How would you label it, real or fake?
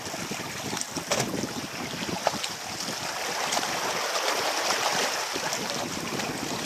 real